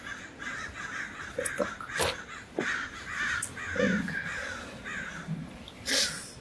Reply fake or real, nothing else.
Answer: real